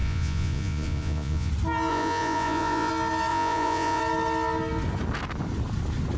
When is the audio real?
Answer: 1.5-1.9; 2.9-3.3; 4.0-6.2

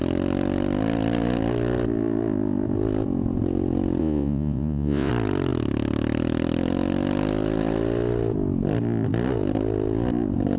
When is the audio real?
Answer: 0.0-4.0; 5.1-10.6

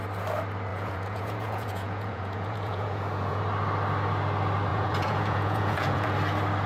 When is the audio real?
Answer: 0.0-0.7; 3.4-4.7; 6.1-6.7

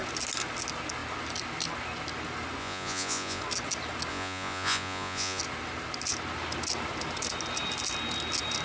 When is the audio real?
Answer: 0.0-2.6; 3.4-4.1; 5.4-8.6

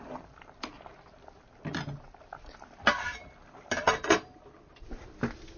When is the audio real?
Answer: 0.0-5.6

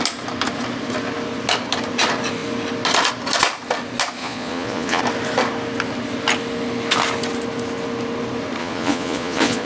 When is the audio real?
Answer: 0.0-4.2; 5.0-8.6

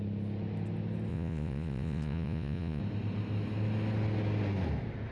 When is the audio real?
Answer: 0.0-1.1; 2.8-5.1